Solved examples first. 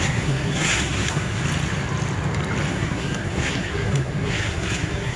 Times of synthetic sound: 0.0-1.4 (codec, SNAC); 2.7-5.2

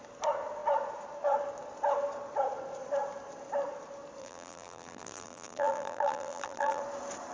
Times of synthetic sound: 4.2-6.8 (vocoder, BigVGAN v2)

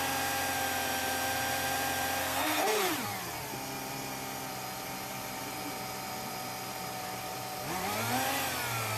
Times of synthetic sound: 2.2-2.8 (codec, SNAC)

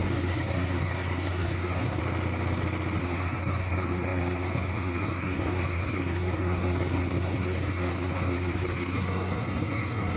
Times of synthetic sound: 0.0-2.0 (codec, SNAC); 3.0-10.2

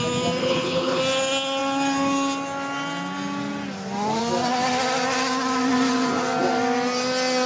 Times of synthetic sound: 0.4-1.0 (codec, HILCodec)

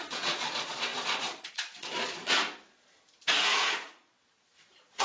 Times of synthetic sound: 0.0-2.4 (vocoder, Vocos); 3.6-5.0